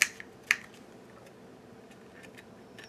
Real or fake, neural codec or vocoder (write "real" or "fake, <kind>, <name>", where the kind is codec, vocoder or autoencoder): real